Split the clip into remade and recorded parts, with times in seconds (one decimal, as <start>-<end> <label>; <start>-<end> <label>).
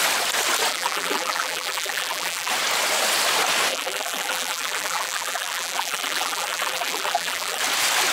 0.0-0.7 recorded; 0.7-2.5 remade; 2.5-3.7 recorded; 3.7-7.6 remade; 7.6-8.1 recorded